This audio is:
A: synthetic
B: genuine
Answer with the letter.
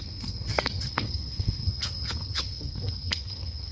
A